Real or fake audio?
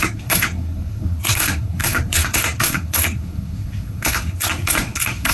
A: fake